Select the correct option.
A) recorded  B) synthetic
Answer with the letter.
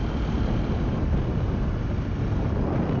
A